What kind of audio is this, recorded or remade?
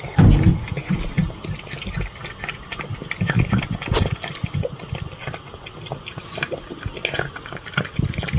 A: recorded